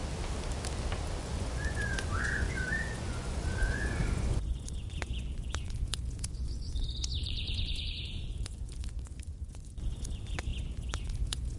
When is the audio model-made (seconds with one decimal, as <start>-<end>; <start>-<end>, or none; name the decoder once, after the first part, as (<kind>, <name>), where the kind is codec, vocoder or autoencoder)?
1.2-11.6 (vocoder, Vocos)